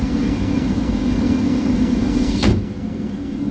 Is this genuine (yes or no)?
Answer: no